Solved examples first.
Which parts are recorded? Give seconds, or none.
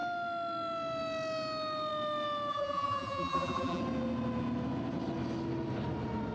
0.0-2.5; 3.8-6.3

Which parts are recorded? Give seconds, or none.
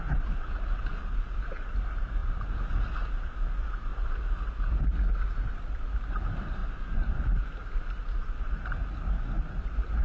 0.0-10.0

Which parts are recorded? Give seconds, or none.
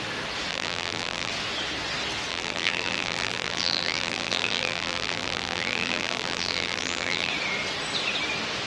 0.0-0.5; 1.3-2.3; 7.3-8.7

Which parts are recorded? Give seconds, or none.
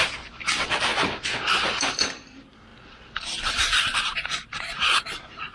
0.9-1.6; 2.7-3.5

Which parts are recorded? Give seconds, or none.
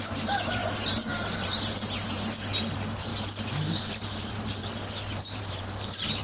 3.1-3.8; 4.6-5.1